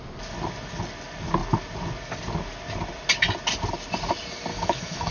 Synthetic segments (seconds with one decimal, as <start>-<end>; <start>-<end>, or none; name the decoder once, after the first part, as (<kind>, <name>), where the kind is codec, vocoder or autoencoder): 4.5-5.1 (autoencoder, DAC-VAE)